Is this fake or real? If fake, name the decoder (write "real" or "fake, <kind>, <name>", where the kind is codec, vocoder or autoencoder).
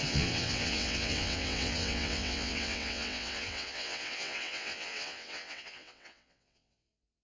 fake, vocoder, WaveNeXt